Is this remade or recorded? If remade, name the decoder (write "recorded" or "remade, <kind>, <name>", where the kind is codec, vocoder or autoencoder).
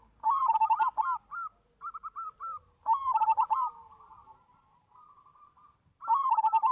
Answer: remade, vocoder, BigVGAN v2